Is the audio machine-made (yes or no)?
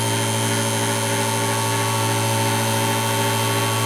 no